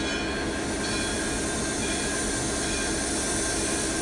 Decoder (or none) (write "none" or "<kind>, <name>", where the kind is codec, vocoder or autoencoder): none